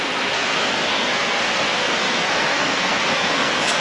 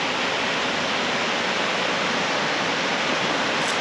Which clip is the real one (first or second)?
second